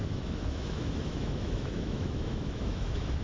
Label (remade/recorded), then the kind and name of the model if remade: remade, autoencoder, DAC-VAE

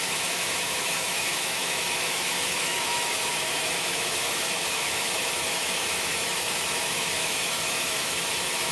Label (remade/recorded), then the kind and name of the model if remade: remade, autoencoder, DAC-VAE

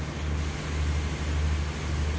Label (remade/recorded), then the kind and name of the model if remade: recorded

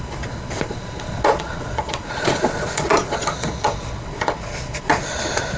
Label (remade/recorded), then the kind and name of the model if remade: remade, vocoder, Vocos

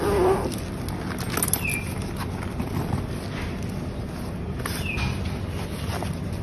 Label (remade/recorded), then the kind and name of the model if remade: recorded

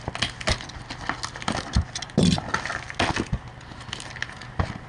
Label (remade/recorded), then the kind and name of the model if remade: recorded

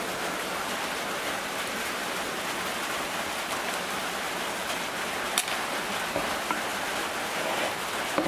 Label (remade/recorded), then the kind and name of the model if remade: recorded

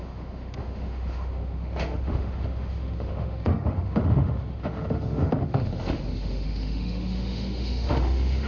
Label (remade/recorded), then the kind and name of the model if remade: remade, autoencoder, DAC-VAE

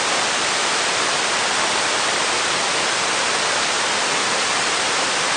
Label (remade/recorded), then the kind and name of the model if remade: recorded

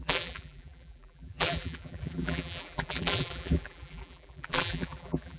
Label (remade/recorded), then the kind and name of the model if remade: remade, vocoder, BigVGAN v2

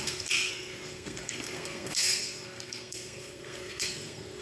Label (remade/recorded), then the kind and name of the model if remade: remade, codec, SNAC